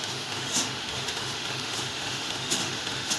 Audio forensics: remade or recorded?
remade